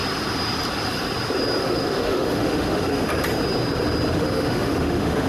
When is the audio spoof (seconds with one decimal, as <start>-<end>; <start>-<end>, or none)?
1.6-3.1; 4.1-5.3